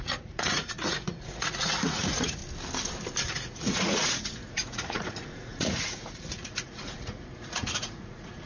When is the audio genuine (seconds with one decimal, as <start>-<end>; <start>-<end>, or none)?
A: 2.4-3.3